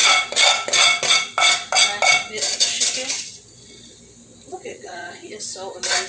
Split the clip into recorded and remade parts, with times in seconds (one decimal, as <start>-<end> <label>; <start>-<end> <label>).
0.0-4.5 recorded; 4.5-5.3 remade; 5.3-6.1 recorded

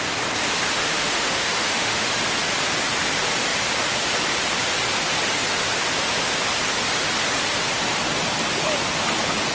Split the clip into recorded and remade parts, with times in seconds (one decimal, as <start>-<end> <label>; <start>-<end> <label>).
0.0-0.8 recorded; 0.8-2.2 remade; 2.2-9.5 recorded

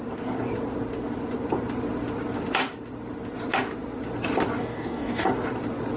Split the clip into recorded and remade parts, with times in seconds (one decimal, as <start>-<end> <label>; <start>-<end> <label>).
0.0-4.6 recorded; 4.6-5.3 remade; 5.3-6.0 recorded

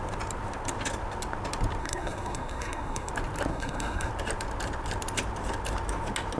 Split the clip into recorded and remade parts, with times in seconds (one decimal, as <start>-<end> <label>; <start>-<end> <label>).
0.0-1.8 recorded; 1.8-3.1 remade; 3.1-3.5 recorded; 3.5-4.1 remade; 4.1-6.4 recorded

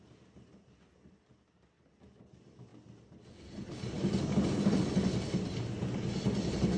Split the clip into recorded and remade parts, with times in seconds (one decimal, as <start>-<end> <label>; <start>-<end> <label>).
0.0-6.8 recorded

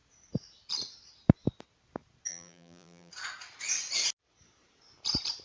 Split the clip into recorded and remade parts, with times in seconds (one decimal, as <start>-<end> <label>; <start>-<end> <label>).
0.0-2.3 recorded; 2.3-3.1 remade; 3.1-5.4 recorded

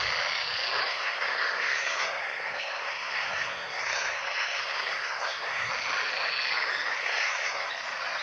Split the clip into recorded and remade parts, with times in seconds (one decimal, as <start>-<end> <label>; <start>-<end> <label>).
0.0-0.8 recorded; 0.8-5.7 remade; 5.7-7.0 recorded; 7.0-7.7 remade; 7.7-8.2 recorded